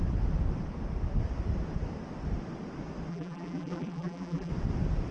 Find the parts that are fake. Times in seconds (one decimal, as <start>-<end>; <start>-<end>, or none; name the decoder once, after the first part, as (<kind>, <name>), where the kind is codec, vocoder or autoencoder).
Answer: 3.1-4.5 (vocoder, BigVGAN v2)